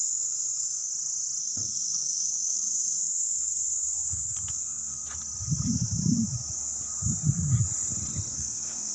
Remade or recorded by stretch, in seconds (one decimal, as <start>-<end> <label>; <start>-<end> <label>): 0.0-0.9 remade; 0.9-1.4 recorded; 1.4-5.0 remade; 5.0-8.3 recorded; 8.3-8.9 remade